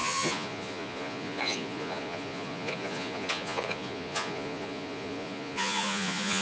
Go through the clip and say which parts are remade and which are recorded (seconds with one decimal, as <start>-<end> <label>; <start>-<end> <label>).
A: 0.0-6.4 remade